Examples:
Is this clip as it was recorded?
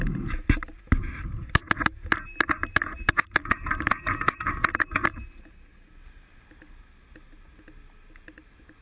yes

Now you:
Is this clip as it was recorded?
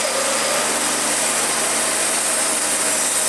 yes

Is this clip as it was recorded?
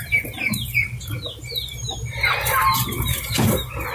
yes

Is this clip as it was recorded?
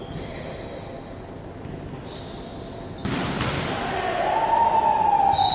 yes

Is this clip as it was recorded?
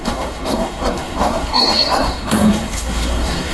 no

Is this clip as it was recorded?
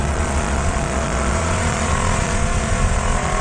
no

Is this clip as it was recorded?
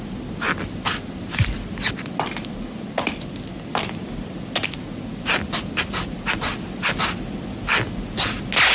yes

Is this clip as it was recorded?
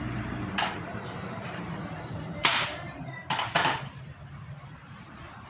no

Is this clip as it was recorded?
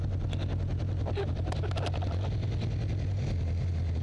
yes